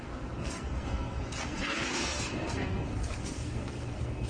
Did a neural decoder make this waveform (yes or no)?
yes